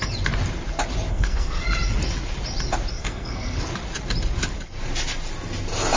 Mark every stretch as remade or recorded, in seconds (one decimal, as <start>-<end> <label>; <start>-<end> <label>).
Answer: 0.0-1.1 recorded; 1.1-1.6 remade; 1.6-2.9 recorded; 2.9-3.6 remade; 3.6-6.0 recorded

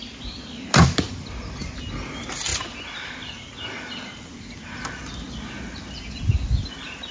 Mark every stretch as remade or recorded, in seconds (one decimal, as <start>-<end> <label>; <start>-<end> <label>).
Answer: 0.0-7.1 recorded

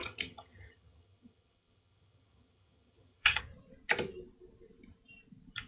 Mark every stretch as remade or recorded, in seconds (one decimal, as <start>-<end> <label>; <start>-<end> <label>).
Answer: 0.0-3.4 remade; 3.4-5.7 recorded